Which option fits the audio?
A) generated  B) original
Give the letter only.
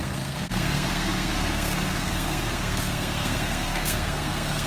A